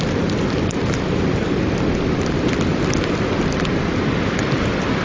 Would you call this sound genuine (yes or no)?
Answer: yes